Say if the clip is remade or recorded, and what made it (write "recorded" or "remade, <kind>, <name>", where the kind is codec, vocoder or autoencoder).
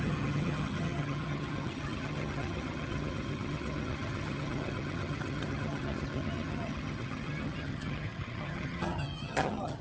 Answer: remade, vocoder, HiFi-GAN